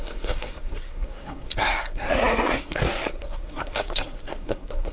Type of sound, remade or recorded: remade